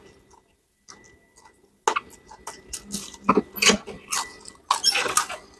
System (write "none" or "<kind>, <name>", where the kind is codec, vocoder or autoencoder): none